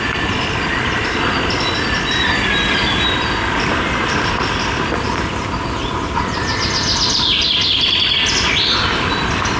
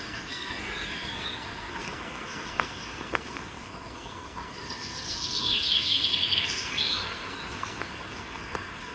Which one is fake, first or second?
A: second